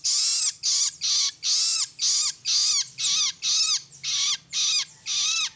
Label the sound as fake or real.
real